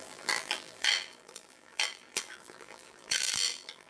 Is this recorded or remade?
remade